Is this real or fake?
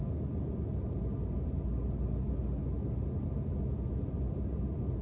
real